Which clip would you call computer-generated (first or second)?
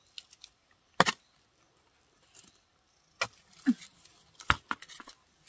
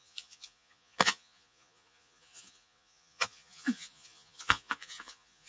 second